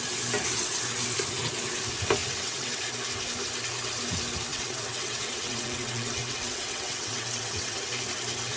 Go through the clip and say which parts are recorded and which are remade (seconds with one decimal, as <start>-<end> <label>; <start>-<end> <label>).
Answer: 0.0-2.2 recorded; 2.2-2.8 remade; 2.8-4.5 recorded; 4.5-7.8 remade; 7.8-8.6 recorded